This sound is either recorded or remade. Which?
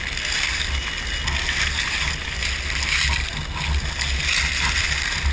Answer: recorded